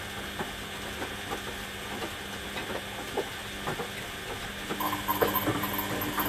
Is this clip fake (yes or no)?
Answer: no